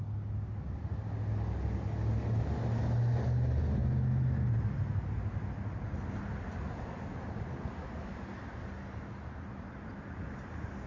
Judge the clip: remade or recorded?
recorded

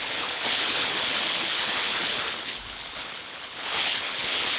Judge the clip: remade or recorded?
remade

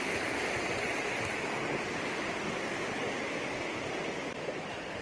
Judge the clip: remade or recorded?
recorded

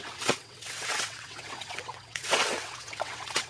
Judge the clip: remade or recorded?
remade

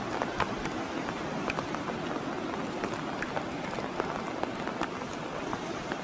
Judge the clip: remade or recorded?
recorded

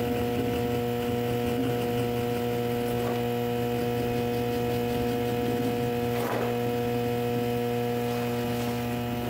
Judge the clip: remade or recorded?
recorded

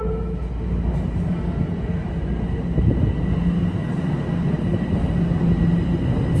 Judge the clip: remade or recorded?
recorded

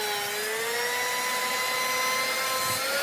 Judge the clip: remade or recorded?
recorded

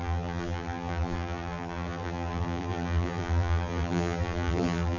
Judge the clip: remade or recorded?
remade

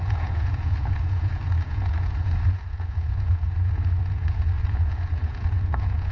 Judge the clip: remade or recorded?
remade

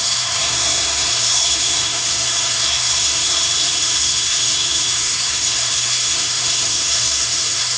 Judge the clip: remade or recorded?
remade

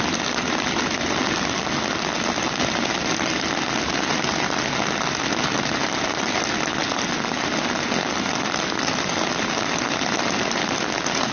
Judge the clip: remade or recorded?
recorded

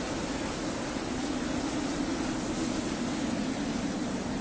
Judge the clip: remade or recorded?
recorded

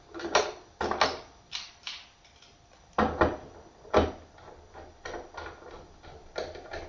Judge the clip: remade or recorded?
recorded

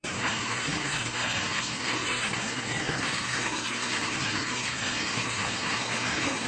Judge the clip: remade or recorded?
remade